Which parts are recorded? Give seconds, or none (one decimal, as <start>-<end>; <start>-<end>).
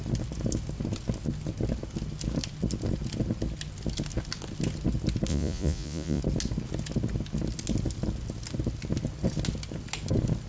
0.0-5.3; 6.2-10.5